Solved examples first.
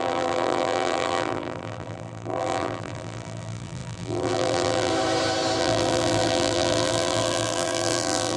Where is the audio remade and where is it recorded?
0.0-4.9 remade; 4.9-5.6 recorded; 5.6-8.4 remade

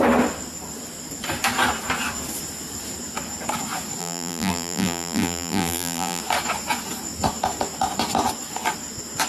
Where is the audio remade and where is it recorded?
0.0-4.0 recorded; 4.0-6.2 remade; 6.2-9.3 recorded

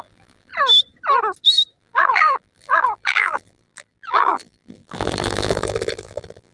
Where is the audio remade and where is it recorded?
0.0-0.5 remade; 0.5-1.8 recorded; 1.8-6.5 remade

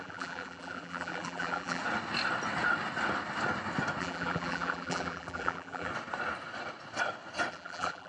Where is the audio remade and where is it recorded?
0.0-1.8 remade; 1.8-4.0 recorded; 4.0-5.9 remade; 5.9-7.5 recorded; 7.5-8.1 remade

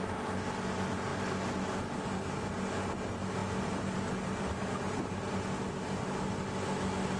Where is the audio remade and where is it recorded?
0.0-7.2 recorded

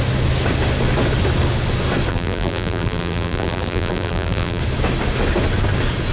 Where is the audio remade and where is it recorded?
0.0-2.1 recorded; 2.1-4.6 remade; 4.6-6.1 recorded

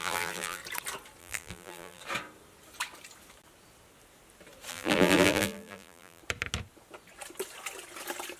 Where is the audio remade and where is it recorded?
0.0-0.6 remade; 0.6-1.2 recorded; 1.2-2.0 remade; 2.0-4.7 recorded; 4.7-6.2 remade; 6.2-8.4 recorded